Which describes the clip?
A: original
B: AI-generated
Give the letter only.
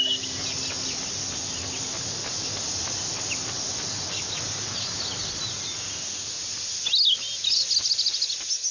A